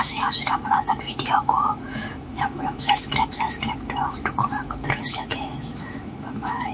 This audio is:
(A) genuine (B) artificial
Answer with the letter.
B